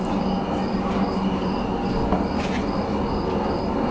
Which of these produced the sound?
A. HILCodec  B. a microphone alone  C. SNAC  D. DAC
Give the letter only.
B